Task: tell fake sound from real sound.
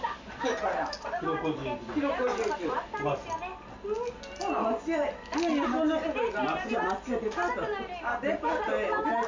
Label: real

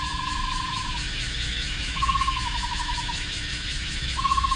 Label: fake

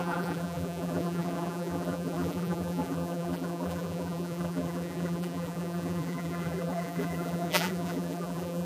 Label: fake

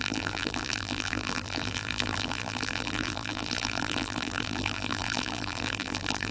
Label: fake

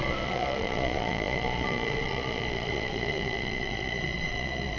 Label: fake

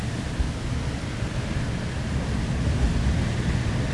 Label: real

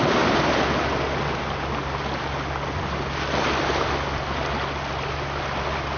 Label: real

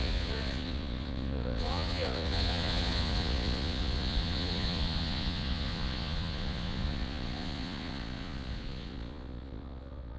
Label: fake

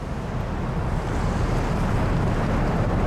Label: real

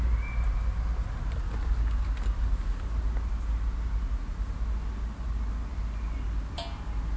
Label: real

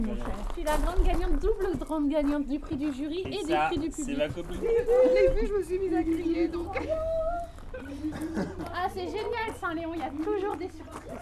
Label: real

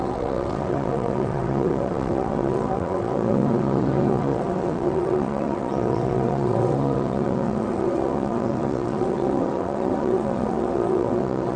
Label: fake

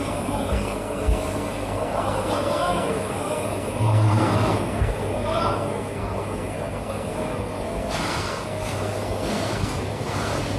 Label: fake